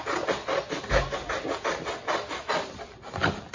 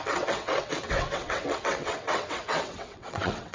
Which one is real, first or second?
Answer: first